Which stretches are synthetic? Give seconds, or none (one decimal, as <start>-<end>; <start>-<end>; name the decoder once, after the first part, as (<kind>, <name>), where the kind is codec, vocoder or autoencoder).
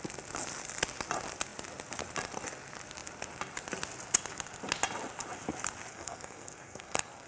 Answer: 5.9-7.3 (codec, SNAC)